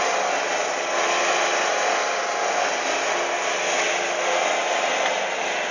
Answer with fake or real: real